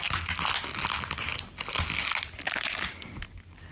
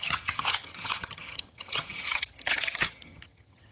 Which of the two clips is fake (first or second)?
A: second